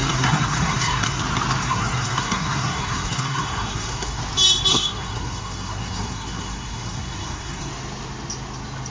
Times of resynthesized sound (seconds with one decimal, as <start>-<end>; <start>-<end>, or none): 0.0-1.2; 1.6-4.2; 4.7-7.7